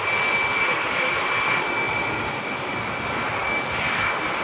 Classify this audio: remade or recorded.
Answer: recorded